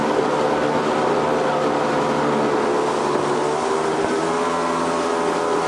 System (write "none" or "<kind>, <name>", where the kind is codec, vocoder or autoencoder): none